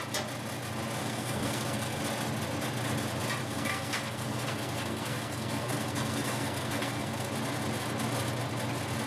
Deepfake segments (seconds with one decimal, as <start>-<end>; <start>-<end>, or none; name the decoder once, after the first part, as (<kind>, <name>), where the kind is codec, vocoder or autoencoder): 1.0-2.0 (codec, SNAC); 3.4-7.3